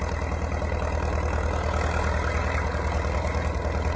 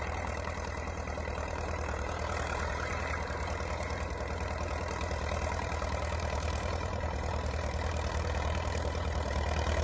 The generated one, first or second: second